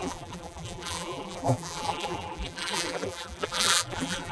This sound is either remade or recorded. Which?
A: remade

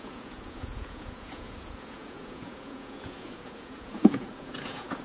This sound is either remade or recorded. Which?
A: remade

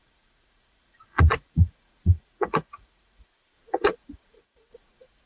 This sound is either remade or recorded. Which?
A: remade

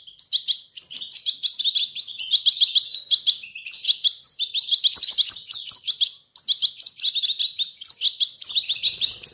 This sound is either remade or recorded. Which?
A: recorded